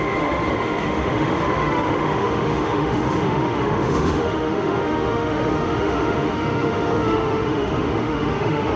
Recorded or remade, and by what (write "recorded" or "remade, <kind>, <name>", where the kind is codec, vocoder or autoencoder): remade, autoencoder, DAC-VAE